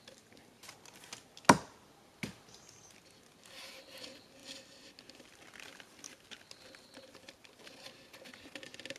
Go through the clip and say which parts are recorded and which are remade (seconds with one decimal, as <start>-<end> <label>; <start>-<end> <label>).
0.0-9.0 recorded